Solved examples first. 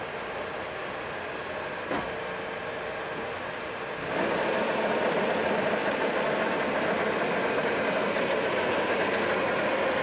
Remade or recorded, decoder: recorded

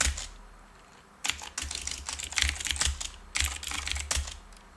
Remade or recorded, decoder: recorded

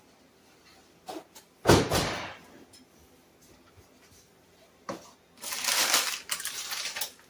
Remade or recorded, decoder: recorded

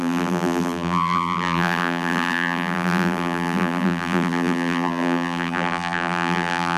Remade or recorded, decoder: remade, vocoder, BigVGAN v2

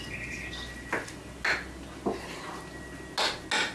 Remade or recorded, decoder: recorded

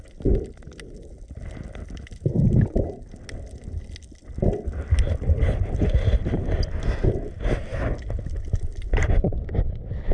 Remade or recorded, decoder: recorded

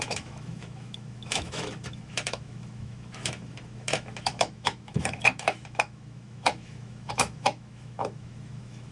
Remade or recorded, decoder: remade, autoencoder, DAC-VAE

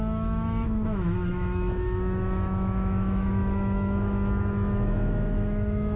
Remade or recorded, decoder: remade, autoencoder, DAC-VAE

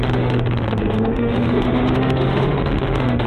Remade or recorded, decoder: remade, autoencoder, DAC-VAE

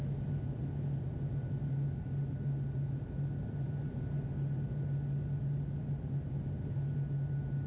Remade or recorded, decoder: recorded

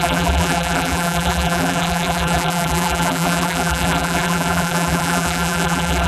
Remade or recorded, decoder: remade, vocoder, BigVGAN v2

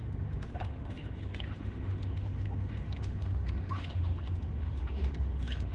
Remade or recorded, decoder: remade, autoencoder, DAC-VAE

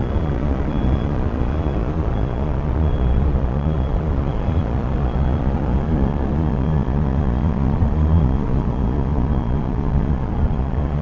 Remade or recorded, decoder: remade, vocoder, Vocos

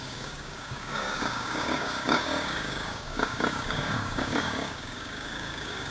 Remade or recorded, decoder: remade, codec, DAC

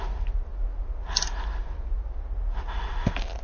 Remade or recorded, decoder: recorded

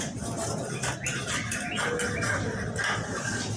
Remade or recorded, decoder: recorded